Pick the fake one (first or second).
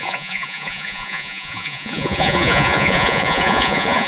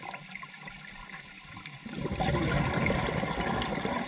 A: first